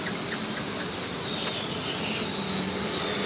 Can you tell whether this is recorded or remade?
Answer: recorded